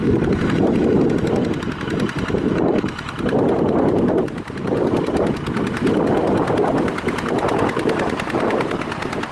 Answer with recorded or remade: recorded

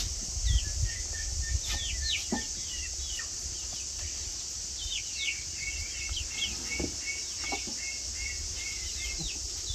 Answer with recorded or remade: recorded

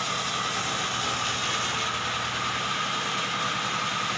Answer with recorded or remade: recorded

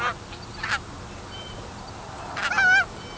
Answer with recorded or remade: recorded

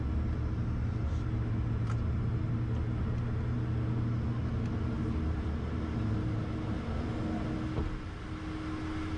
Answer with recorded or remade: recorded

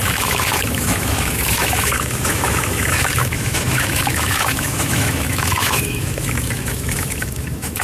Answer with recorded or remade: remade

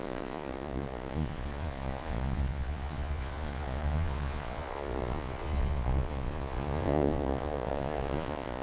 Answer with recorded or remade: remade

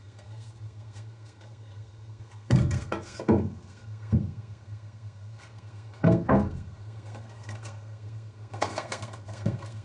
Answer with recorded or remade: remade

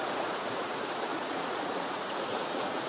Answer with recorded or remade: remade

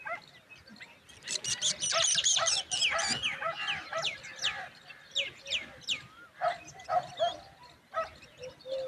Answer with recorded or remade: recorded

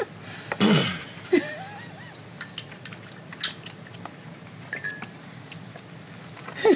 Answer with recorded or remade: recorded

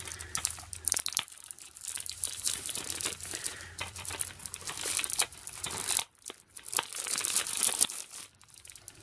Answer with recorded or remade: remade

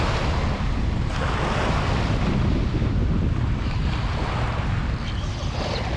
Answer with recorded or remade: recorded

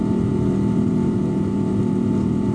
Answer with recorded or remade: remade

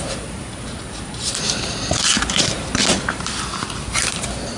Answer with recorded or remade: remade